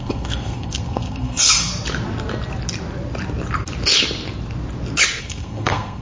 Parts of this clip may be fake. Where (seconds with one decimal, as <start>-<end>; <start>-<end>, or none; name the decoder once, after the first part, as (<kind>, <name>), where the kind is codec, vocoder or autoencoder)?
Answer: 0.0-1.7 (codec, SNAC); 5.2-6.0